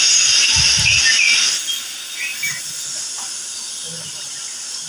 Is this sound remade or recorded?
recorded